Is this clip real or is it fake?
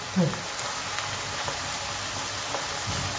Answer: real